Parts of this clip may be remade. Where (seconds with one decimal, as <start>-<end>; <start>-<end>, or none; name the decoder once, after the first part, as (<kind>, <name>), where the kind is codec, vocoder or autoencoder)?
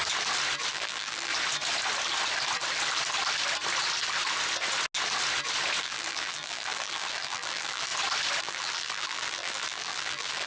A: 0.7-1.3 (vocoder, BigVGAN v2); 5.8-7.9; 8.4-10.5